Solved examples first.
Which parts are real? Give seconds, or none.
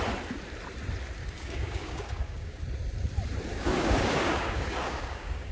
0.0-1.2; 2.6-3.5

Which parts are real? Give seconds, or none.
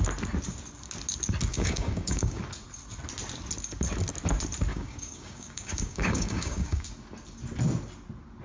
0.0-1.5; 2.4-4.7; 6.9-8.4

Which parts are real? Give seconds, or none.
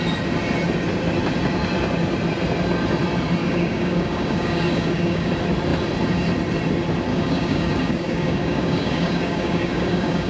0.0-3.4; 5.3-7.1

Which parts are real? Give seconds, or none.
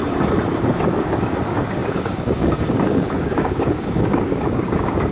0.0-0.6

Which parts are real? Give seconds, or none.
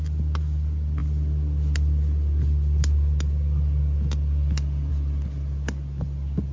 0.0-6.5